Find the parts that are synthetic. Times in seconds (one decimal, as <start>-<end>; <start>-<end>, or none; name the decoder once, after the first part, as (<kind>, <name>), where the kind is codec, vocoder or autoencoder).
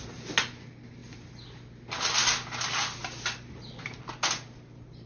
none